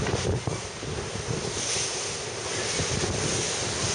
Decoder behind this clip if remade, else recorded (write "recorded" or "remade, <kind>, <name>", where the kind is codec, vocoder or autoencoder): recorded